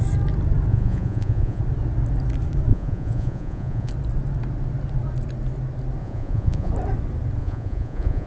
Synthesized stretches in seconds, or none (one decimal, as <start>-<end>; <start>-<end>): 0.7-1.6; 2.7-3.9; 6.0-6.7; 7.4-8.3